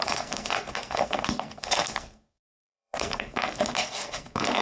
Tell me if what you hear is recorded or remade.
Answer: remade